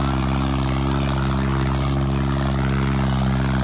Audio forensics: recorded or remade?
recorded